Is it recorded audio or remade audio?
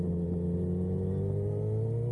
recorded